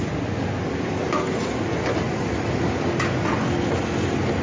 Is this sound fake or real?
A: real